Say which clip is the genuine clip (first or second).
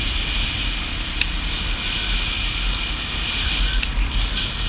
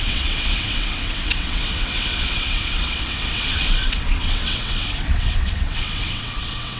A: first